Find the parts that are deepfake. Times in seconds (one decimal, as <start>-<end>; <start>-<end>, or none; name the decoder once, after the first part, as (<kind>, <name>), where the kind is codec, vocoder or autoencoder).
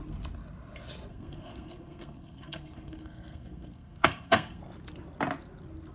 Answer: 1.1-4.6 (codec, SNAC)